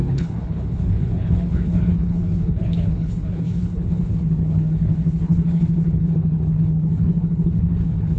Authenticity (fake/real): fake